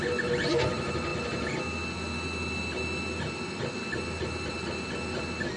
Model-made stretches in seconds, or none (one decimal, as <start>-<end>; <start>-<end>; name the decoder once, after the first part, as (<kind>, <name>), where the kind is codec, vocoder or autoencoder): none